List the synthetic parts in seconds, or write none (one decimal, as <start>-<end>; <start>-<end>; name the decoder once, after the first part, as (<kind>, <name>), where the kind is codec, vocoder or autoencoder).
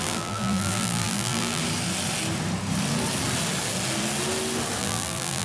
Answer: 0.0-1.6 (vocoder, BigVGAN v2); 4.8-5.4